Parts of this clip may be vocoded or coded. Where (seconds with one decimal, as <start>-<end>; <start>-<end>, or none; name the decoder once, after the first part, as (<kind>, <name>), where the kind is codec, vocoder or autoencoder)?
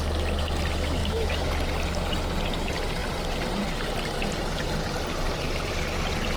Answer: 1.0-1.5 (autoencoder, DAC-VAE)